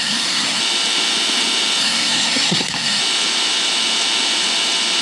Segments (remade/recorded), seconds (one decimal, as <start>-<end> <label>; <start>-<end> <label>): 0.0-0.6 remade; 0.6-1.8 recorded; 1.8-3.0 remade; 3.0-5.0 recorded